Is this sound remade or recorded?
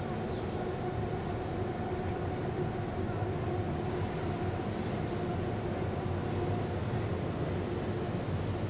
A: recorded